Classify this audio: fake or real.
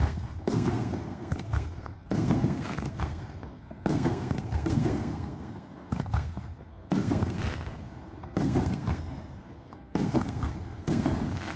fake